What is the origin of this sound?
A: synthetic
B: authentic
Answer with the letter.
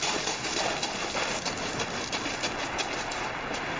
B